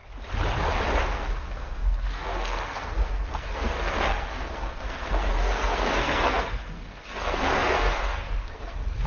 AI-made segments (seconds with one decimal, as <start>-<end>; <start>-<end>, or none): 1.1-9.1